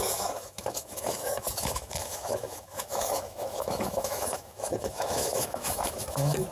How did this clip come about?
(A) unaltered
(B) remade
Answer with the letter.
B